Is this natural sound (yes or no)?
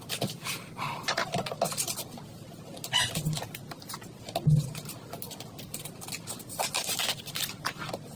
yes